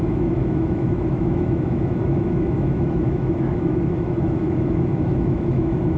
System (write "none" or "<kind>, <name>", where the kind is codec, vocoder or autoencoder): autoencoder, DAC-VAE